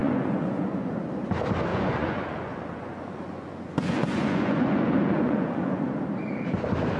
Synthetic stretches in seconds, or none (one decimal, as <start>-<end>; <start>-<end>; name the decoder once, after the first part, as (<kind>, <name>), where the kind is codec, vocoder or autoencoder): 0.0-0.9 (vocoder, Vocos); 1.7-5.8